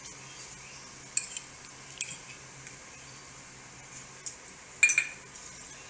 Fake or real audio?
real